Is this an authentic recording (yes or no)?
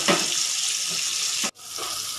yes